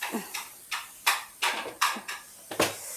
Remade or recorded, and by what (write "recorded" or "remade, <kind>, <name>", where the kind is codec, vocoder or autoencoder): recorded